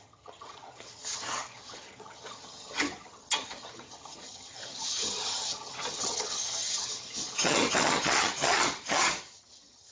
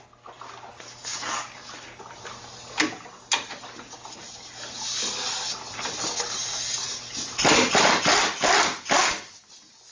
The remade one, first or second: first